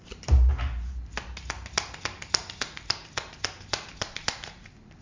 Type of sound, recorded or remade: recorded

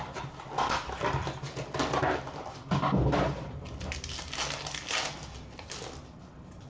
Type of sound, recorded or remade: recorded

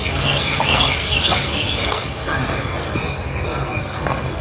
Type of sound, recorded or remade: remade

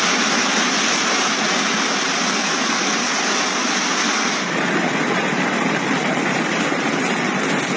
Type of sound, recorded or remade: recorded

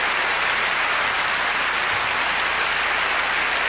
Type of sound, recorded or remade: recorded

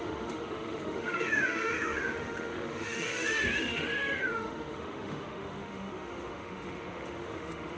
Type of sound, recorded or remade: remade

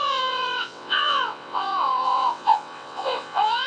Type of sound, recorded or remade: remade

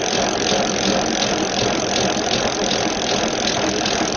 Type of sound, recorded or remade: recorded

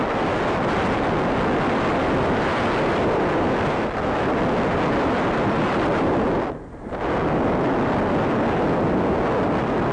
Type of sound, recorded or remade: recorded